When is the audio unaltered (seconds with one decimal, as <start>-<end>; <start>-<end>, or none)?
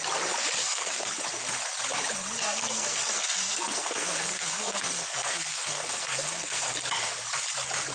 0.0-0.6; 1.1-2.4; 6.7-7.9